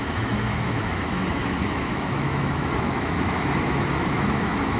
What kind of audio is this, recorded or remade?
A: remade